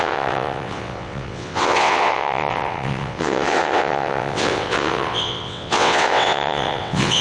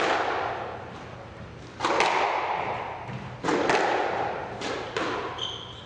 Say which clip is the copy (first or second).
first